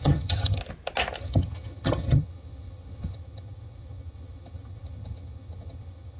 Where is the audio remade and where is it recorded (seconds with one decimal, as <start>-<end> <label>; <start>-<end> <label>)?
0.0-0.6 remade; 0.6-1.2 recorded; 1.2-6.2 remade